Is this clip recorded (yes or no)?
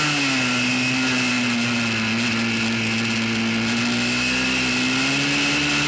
yes